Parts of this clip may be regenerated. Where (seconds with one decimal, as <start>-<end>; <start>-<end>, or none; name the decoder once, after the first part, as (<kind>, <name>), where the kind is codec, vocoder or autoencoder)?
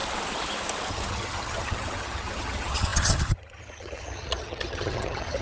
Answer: 0.9-5.4 (vocoder, HiFi-GAN)